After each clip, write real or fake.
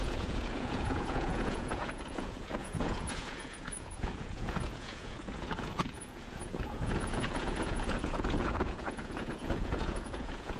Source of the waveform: fake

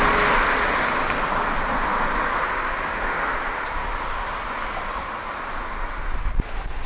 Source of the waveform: real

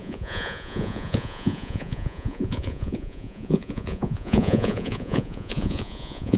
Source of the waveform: fake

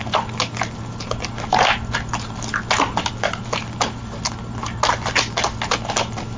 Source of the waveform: real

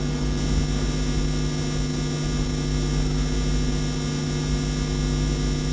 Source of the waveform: real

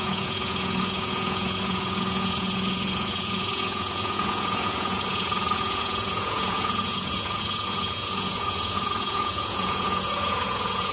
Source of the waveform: fake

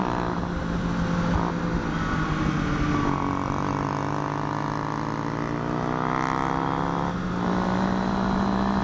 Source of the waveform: real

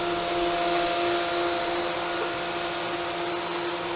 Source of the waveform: real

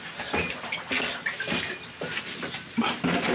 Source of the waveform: real